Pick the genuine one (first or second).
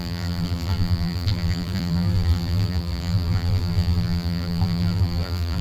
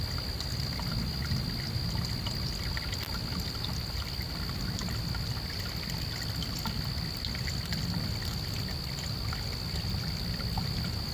second